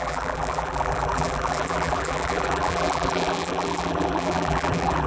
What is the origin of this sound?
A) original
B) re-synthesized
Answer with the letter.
B